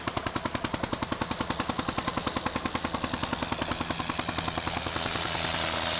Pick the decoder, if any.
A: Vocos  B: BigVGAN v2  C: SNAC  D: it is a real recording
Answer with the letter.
D